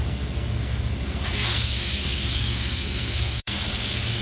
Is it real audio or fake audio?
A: fake